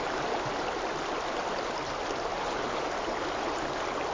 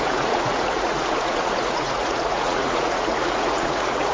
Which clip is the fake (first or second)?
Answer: second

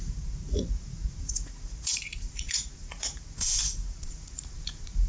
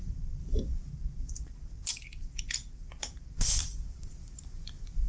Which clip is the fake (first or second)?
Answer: first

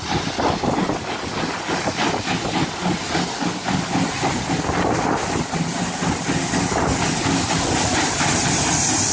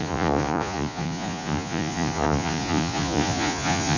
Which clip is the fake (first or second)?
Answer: second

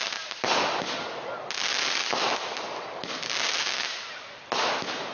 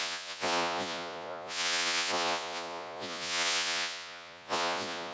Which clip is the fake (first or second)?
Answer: second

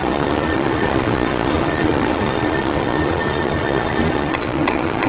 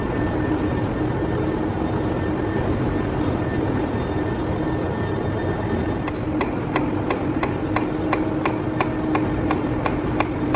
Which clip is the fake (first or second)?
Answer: first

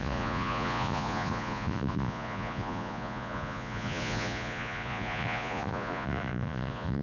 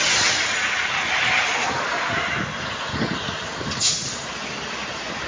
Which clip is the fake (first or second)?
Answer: first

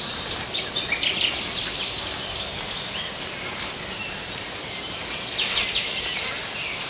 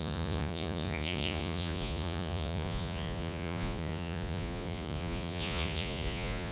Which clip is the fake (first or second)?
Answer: second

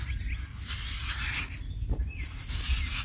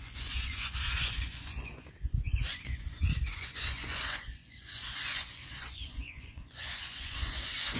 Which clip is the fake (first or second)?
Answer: second